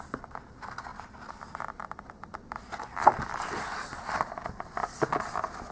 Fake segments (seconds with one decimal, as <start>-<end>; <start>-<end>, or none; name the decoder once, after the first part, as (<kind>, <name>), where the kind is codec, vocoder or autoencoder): none